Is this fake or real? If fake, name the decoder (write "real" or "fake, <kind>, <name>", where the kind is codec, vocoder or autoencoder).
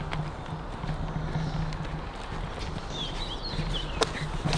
real